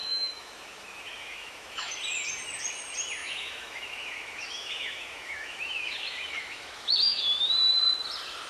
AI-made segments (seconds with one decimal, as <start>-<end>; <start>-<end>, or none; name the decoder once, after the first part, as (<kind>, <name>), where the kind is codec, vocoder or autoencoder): 0.0-1.9 (autoencoder, DAC-VAE); 3.2-7.2